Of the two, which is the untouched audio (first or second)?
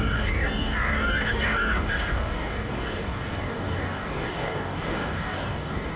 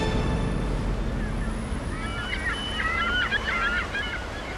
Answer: second